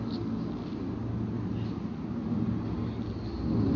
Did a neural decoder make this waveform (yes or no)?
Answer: no